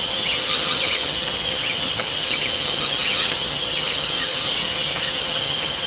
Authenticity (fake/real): fake